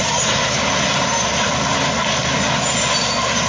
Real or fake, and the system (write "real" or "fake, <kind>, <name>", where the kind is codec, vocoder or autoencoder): real